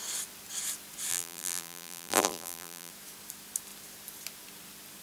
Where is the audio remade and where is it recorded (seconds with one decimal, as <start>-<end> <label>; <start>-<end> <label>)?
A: 0.0-1.1 recorded; 1.1-2.9 remade; 2.9-5.0 recorded